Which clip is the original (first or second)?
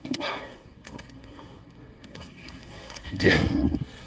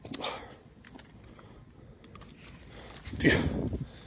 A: second